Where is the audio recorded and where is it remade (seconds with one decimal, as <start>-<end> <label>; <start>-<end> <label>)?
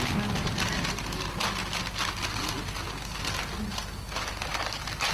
0.0-5.1 recorded